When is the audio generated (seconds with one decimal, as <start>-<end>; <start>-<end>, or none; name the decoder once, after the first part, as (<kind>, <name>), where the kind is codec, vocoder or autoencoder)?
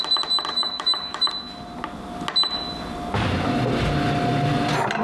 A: 0.5-1.3 (autoencoder, DAC-VAE)